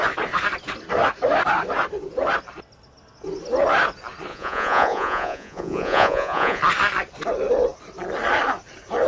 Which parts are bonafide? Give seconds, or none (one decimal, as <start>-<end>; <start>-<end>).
0.0-4.3; 6.6-9.1